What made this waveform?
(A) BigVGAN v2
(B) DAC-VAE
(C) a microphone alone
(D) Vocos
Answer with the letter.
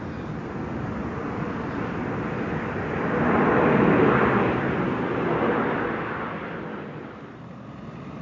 C